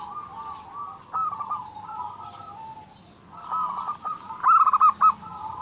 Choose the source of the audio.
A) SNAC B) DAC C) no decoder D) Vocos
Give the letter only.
C